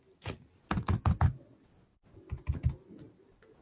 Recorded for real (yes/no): yes